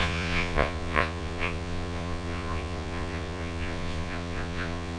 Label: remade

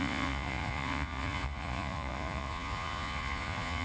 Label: remade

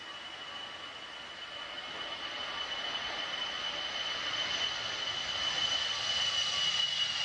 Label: recorded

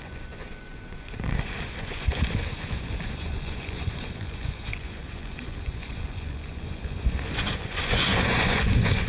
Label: remade